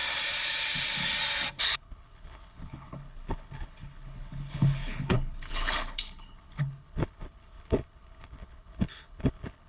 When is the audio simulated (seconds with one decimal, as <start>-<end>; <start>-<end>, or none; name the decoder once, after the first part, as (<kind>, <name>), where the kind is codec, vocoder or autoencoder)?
1.6-9.7 (codec, HILCodec)